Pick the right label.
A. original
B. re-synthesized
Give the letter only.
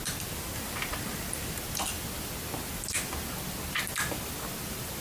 A